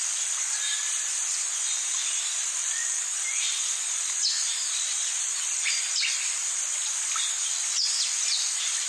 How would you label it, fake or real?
real